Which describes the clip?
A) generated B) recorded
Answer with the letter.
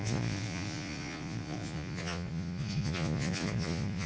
A